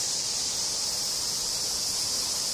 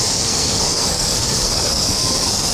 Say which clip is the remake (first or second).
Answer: second